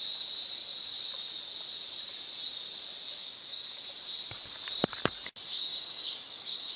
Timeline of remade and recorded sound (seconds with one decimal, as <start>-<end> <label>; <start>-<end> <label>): 0.0-3.2 recorded; 3.2-3.8 remade; 3.8-5.5 recorded; 5.5-6.8 remade